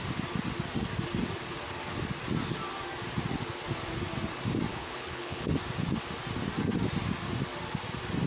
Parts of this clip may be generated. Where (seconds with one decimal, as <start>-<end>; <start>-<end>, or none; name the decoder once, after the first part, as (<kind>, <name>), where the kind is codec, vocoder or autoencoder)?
4.7-5.5 (codec, HILCodec)